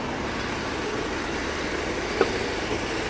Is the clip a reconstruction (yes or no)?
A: no